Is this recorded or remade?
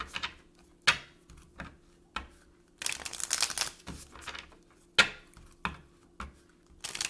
recorded